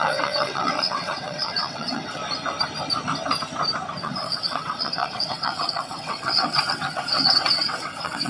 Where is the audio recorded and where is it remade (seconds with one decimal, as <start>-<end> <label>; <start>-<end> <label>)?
0.0-2.2 remade; 2.2-4.0 recorded; 4.0-8.3 remade